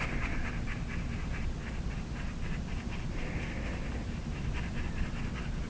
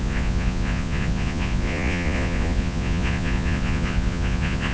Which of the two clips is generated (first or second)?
second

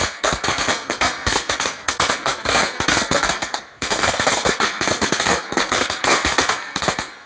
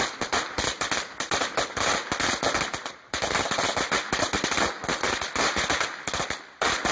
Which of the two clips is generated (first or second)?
first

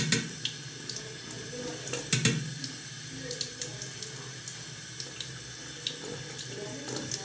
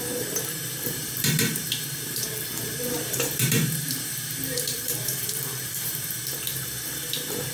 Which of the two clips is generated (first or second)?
second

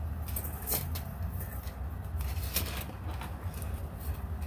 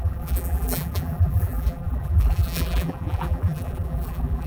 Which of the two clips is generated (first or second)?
second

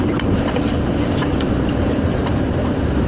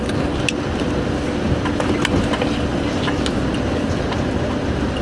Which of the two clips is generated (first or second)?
first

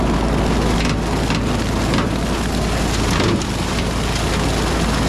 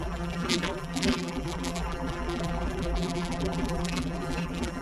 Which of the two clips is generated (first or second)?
second